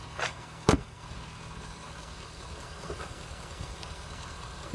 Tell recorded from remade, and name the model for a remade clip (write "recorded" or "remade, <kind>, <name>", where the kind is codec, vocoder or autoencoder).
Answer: remade, codec, SNAC